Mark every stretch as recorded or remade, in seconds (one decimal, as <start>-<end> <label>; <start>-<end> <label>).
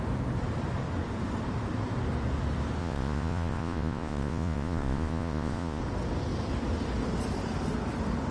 0.0-2.8 recorded; 2.8-5.8 remade; 5.8-8.3 recorded